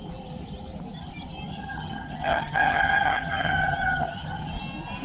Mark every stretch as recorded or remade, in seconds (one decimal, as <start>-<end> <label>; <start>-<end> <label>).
0.0-1.5 recorded; 1.5-4.5 remade; 4.5-5.0 recorded